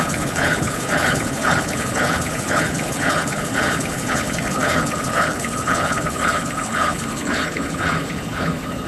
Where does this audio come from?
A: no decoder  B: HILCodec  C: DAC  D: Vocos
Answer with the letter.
B